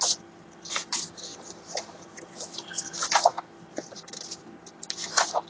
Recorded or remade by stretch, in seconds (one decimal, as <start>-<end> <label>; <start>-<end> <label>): 0.0-5.5 recorded